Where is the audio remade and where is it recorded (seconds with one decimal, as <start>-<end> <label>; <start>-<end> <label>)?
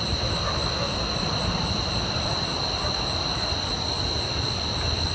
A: 0.0-5.1 recorded